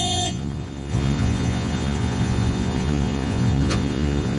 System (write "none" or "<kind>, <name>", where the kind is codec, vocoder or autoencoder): vocoder, Vocos